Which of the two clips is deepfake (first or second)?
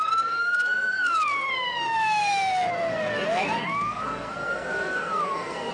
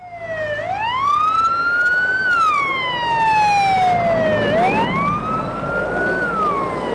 first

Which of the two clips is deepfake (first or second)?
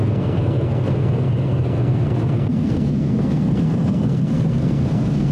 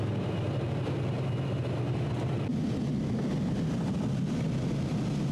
first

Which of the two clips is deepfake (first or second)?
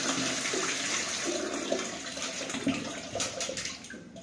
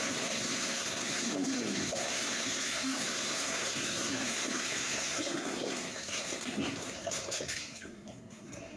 second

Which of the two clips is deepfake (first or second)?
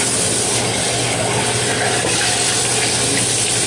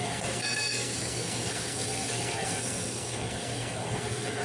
second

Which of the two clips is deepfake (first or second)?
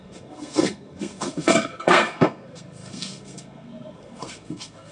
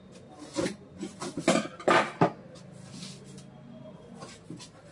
first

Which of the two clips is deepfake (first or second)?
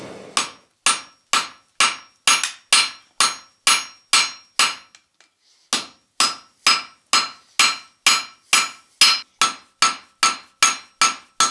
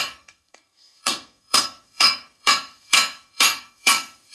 second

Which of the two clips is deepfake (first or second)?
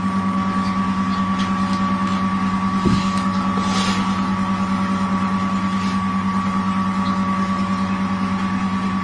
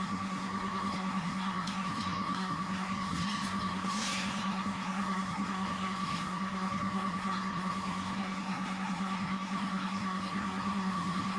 second